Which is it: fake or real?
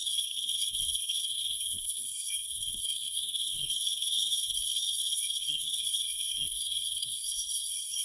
fake